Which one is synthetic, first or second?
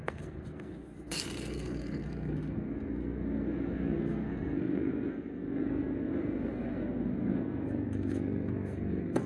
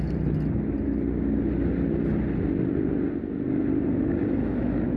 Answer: first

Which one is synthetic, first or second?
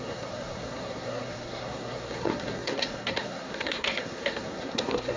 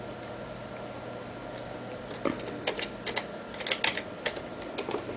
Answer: first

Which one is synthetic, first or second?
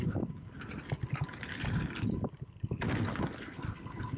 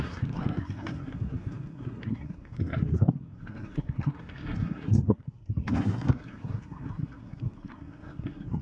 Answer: second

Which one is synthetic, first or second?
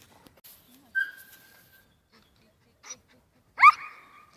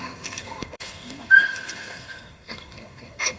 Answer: second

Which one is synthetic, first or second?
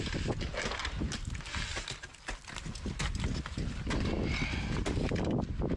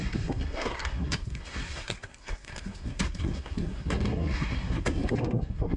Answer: second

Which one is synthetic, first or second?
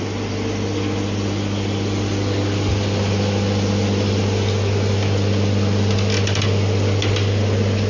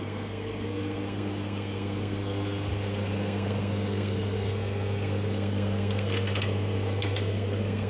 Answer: second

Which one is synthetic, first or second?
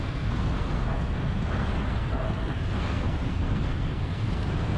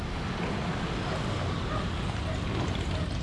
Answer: first